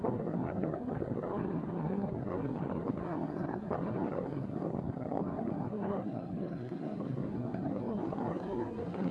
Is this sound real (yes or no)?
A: no